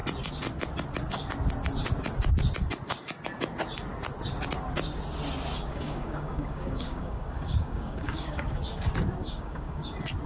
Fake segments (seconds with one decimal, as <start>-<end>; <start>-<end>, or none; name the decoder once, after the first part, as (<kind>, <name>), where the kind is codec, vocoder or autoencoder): 5.7-8.6 (codec, DAC); 9.2-9.9